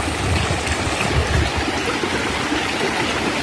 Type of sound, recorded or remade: recorded